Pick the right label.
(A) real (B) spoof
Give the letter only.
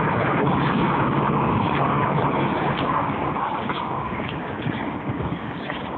B